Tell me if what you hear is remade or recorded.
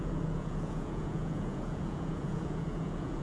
remade